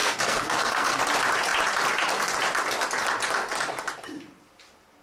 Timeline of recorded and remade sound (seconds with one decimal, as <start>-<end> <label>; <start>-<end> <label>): 0.0-1.0 remade; 1.0-5.0 recorded